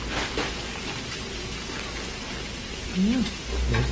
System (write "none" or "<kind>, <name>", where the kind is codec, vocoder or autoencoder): none